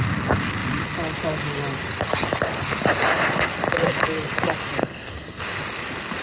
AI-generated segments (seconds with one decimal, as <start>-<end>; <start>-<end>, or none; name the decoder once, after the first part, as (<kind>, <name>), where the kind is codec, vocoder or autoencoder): 4.8-5.4 (codec, SNAC)